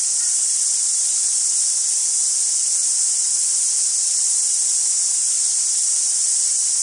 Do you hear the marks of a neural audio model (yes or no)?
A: no